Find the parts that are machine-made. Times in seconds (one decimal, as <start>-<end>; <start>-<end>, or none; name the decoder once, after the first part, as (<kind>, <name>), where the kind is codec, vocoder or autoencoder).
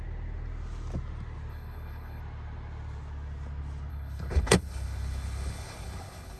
1.5-2.2 (codec, HILCodec); 3.9-6.4